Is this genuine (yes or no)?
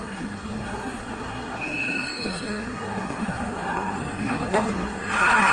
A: no